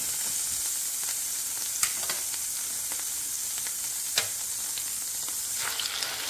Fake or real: real